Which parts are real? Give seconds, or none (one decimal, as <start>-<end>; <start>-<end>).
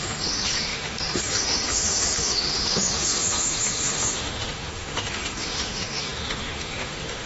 none